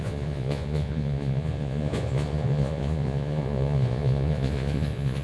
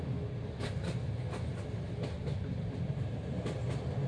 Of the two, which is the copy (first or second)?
first